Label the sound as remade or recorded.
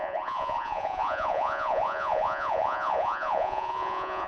remade